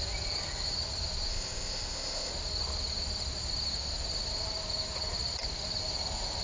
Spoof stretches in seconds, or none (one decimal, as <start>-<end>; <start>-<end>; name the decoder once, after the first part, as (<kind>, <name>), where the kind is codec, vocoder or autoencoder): 1.3-2.3 (codec, ZipCodec)